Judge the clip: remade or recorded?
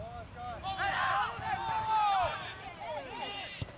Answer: recorded